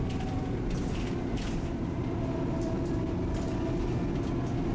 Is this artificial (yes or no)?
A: no